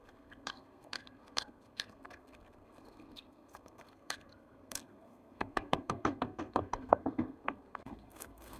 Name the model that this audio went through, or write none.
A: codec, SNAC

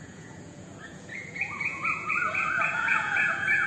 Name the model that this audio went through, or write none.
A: vocoder, Vocos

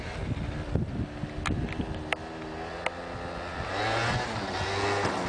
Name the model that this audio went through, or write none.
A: none